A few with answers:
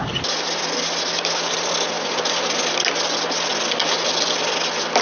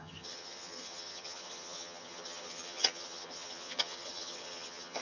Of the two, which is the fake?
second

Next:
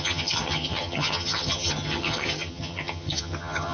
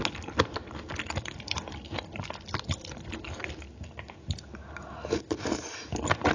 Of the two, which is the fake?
first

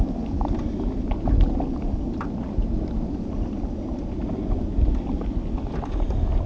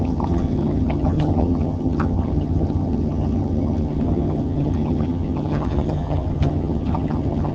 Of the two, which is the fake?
second